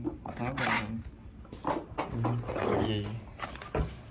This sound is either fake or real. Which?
real